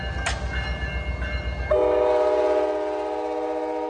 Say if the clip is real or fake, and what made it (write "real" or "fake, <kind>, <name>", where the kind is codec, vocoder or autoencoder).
real